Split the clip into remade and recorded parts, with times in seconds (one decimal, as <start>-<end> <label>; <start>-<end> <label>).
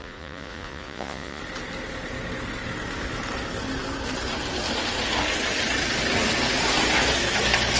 0.0-1.4 remade; 1.4-7.8 recorded